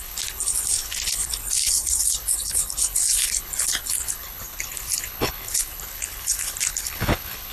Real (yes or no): no